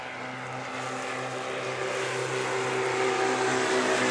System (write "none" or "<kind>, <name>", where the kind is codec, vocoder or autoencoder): none